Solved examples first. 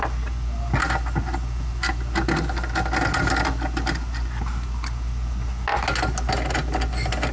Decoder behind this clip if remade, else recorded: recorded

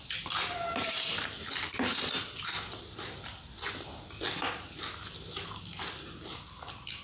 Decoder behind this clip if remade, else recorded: recorded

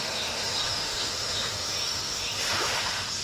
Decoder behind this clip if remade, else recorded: remade, autoencoder, DAC-VAE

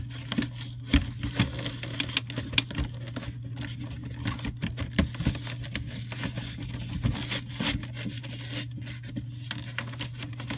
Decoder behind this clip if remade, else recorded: recorded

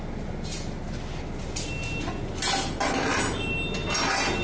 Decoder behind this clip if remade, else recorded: recorded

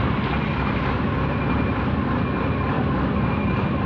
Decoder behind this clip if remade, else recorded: recorded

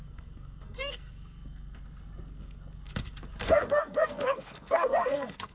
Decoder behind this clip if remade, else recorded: remade, codec, SNAC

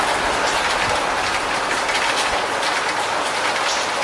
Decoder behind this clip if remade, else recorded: recorded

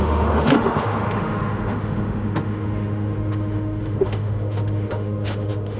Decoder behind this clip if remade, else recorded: remade, autoencoder, DAC-VAE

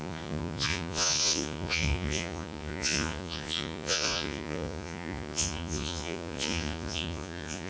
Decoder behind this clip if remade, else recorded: remade, vocoder, Vocos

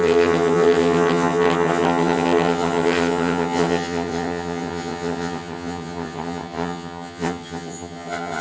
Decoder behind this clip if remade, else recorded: remade, vocoder, HiFi-GAN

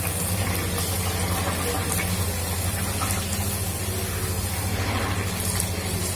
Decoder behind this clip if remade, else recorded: recorded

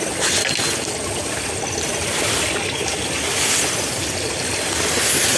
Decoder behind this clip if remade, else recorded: recorded